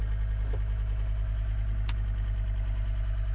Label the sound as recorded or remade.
recorded